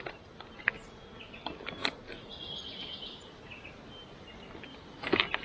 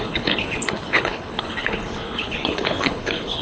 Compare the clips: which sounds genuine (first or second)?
first